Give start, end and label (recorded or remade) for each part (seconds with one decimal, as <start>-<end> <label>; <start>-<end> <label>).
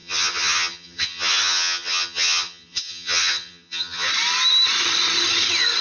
0.0-4.1 remade; 4.1-5.8 recorded